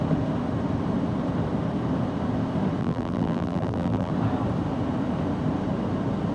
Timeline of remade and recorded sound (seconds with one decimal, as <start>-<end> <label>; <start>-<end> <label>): 0.0-2.8 recorded; 2.8-4.1 remade; 4.1-6.3 recorded